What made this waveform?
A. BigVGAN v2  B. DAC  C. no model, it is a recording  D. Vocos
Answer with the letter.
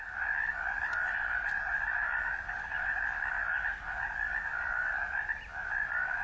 C